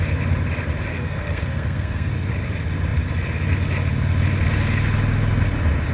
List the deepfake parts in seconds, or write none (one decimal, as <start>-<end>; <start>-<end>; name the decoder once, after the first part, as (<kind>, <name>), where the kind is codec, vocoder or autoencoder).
0.9-2.1 (codec, SNAC)